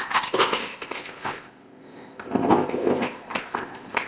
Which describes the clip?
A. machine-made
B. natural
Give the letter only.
A